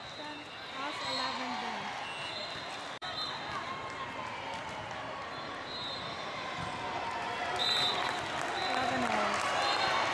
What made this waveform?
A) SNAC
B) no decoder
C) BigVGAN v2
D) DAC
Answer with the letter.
B